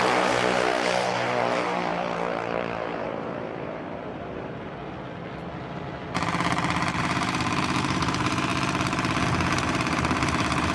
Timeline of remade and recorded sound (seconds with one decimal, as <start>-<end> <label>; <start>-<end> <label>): 0.0-4.8 remade; 4.8-7.0 recorded; 7.0-8.5 remade; 8.5-9.6 recorded; 9.6-10.7 remade